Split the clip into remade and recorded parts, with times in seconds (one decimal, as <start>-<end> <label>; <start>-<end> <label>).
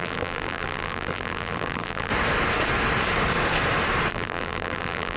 0.0-2.1 remade; 2.1-4.1 recorded; 4.1-5.2 remade